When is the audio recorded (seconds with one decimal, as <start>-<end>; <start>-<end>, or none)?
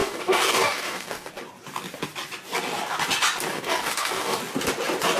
1.3-3.5; 4.4-5.2